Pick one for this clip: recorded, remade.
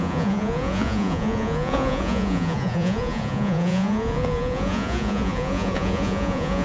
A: remade